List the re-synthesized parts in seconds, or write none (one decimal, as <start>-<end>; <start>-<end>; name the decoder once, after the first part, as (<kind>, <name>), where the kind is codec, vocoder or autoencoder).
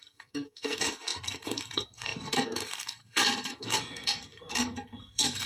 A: 0.0-5.5 (codec, SNAC)